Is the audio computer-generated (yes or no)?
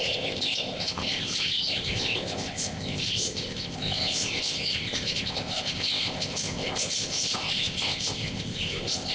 yes